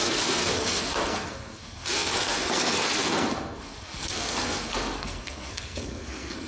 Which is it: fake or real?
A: fake